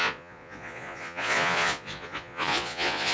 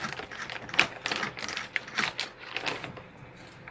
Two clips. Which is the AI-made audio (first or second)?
first